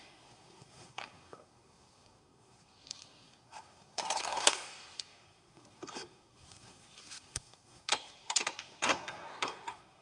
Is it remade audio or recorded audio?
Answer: remade